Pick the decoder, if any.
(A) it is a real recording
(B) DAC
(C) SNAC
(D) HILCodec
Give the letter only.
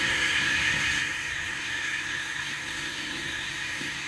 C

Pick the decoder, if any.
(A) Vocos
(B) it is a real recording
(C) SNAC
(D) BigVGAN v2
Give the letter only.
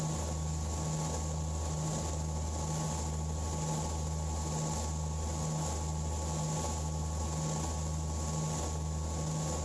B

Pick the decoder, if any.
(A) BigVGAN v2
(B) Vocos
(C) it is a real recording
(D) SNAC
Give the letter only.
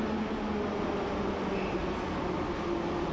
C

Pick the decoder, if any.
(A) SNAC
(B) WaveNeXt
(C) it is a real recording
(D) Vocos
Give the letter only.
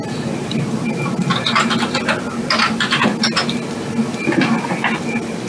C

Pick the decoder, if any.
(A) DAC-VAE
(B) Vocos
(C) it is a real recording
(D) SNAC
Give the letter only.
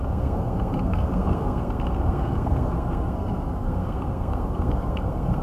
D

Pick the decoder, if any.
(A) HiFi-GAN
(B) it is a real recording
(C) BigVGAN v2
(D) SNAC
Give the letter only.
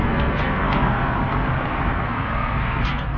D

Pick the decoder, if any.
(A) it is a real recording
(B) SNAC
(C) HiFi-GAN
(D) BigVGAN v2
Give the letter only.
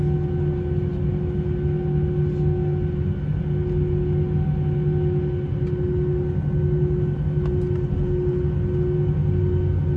A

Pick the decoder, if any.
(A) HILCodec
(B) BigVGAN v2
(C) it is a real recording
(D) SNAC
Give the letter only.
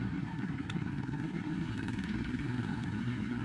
D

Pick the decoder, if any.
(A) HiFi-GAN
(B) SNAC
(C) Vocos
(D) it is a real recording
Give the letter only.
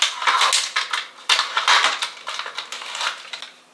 D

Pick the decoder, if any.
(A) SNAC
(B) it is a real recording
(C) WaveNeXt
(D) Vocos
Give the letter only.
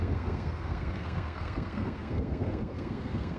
A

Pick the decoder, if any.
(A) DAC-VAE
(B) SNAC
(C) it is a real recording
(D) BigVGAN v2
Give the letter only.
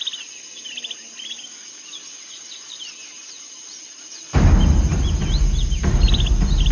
C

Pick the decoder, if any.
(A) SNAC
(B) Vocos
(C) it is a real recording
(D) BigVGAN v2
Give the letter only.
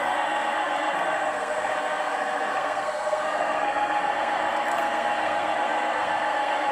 A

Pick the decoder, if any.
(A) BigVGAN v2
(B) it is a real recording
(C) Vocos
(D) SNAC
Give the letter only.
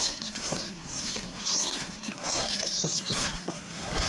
D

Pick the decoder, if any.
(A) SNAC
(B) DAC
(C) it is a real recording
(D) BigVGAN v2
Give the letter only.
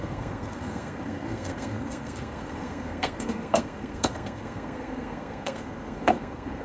A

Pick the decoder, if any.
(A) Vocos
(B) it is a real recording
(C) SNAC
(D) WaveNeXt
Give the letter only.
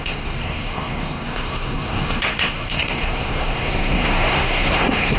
C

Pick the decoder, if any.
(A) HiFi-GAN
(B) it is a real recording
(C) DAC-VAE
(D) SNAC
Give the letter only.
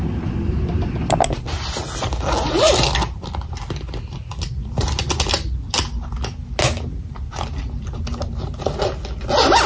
B